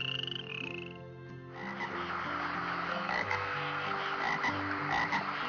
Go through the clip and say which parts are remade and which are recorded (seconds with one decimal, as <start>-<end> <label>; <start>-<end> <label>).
0.0-2.9 recorded; 2.9-3.9 remade; 3.9-5.5 recorded

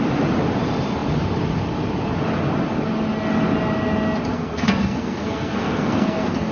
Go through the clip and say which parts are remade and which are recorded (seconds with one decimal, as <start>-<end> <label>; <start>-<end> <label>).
0.0-4.3 recorded; 4.3-6.5 remade